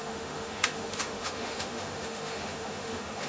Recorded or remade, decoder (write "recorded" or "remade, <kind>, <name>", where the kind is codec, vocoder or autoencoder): remade, autoencoder, DAC-VAE